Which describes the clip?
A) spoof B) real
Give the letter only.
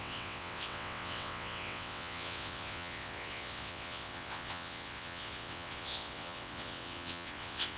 A